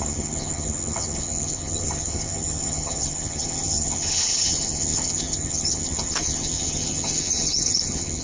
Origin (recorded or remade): remade